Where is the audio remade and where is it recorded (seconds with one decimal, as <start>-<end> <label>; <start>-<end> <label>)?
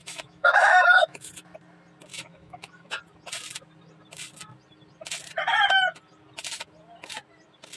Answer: 0.0-1.3 remade; 1.3-2.1 recorded; 2.1-3.0 remade; 3.0-7.8 recorded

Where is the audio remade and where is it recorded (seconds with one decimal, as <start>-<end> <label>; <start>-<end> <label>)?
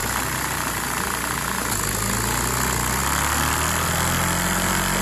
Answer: 0.0-5.0 recorded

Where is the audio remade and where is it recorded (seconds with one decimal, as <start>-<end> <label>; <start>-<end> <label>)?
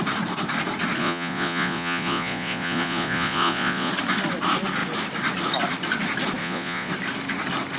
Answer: 0.0-1.0 recorded; 1.0-3.9 remade; 3.9-6.4 recorded; 6.4-6.9 remade; 6.9-7.8 recorded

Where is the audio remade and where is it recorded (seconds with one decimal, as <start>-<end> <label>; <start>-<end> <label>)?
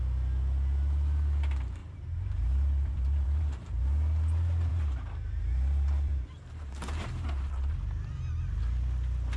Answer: 0.0-1.8 recorded; 1.8-3.7 remade; 3.7-4.7 recorded; 4.7-7.5 remade; 7.5-9.4 recorded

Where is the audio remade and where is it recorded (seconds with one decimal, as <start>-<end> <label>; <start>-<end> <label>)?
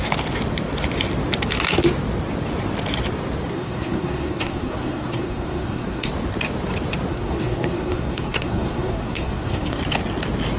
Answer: 0.0-3.5 recorded; 3.5-6.1 remade; 6.1-7.1 recorded; 7.1-9.8 remade; 9.8-10.6 recorded